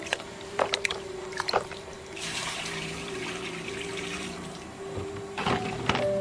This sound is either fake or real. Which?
fake